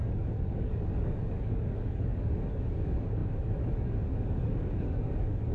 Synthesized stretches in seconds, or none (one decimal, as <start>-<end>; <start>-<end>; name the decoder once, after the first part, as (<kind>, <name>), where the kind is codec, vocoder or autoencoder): 0.0-5.5 (codec, DAC)